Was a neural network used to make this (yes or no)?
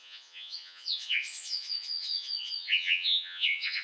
yes